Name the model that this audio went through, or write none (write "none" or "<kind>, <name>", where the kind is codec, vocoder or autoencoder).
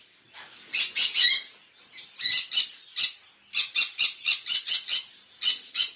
none